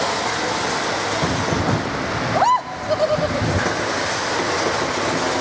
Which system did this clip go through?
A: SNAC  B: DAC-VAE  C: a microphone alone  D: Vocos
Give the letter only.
C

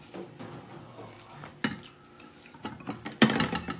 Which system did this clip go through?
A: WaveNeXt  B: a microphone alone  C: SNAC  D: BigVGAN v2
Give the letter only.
B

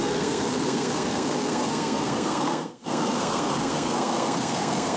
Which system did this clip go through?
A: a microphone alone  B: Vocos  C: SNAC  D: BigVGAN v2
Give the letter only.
C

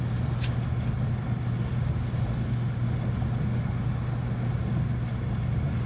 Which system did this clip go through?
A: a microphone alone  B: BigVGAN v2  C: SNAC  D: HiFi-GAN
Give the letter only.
A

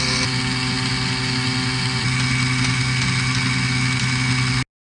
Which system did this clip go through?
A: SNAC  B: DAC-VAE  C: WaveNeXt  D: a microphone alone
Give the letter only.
D